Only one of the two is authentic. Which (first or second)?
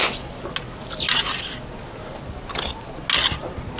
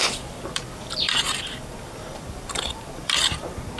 first